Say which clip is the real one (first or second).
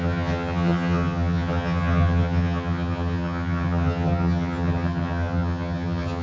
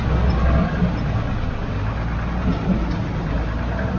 second